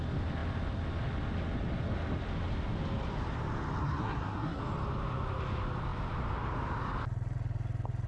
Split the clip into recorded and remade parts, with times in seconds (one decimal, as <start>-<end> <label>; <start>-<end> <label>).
0.0-3.8 recorded; 3.8-4.6 remade; 4.6-8.1 recorded